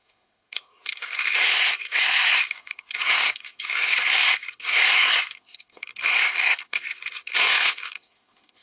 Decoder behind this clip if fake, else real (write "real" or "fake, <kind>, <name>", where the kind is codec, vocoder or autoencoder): fake, codec, SNAC